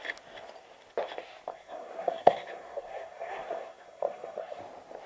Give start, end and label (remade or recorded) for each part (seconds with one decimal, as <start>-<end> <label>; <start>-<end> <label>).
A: 0.0-1.5 recorded; 1.5-4.6 remade; 4.6-5.1 recorded